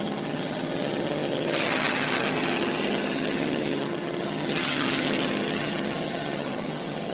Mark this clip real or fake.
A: fake